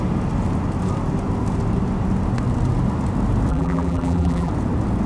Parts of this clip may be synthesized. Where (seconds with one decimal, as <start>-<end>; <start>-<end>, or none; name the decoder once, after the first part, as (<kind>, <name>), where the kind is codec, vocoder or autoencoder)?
3.5-4.5 (vocoder, BigVGAN v2)